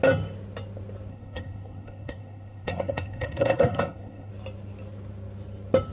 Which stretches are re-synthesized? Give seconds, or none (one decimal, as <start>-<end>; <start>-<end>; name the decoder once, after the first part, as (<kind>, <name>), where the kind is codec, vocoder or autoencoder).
1.1-4.3 (codec, SNAC)